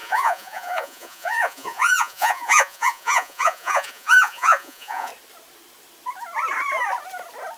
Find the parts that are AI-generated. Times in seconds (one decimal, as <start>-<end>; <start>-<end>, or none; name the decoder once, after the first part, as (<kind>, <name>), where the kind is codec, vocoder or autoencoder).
0.0-5.1 (vocoder, Vocos)

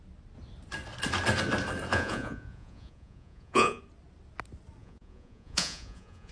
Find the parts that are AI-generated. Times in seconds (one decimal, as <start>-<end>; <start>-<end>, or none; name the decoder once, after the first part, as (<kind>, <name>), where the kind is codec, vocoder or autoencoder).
1.9-3.8 (vocoder, Vocos); 4.8-6.3

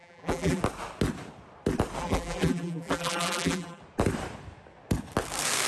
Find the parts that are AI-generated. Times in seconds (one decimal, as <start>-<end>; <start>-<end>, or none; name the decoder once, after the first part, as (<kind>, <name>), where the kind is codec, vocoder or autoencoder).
0.0-0.6 (vocoder, BigVGAN v2); 2.0-3.8

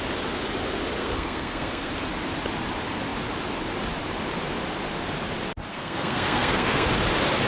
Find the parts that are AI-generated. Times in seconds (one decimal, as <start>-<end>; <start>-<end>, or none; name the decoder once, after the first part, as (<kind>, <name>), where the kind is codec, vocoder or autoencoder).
1.0-1.9 (codec, SNAC); 5.7-6.9

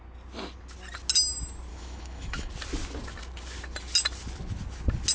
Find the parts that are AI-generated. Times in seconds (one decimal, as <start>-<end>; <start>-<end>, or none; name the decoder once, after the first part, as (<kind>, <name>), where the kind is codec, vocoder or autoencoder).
1.7-2.5 (autoencoder, DAC-VAE)

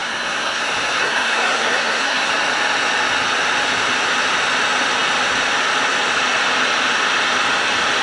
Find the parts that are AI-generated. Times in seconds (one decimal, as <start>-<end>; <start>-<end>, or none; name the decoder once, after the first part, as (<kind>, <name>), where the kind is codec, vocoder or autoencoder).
0.0-0.6 (codec, SNAC); 1.0-2.3

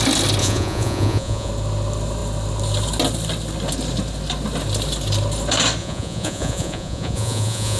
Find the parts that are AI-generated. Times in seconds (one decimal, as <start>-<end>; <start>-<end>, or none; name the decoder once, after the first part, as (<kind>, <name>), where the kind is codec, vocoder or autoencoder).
0.4-1.5 (vocoder, Vocos); 5.8-7.8

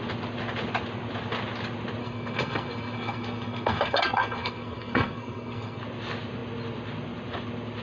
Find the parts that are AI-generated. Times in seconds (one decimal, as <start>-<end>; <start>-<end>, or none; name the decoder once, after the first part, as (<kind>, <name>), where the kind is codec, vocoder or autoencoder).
2.0-5.8 (codec, SNAC)